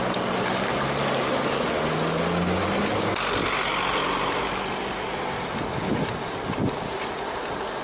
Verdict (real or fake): real